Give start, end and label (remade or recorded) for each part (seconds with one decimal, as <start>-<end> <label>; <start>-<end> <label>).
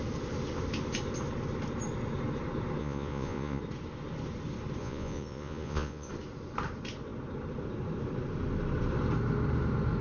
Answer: 0.0-2.8 recorded; 2.8-3.6 remade; 3.6-4.8 recorded; 4.8-6.1 remade; 6.1-10.0 recorded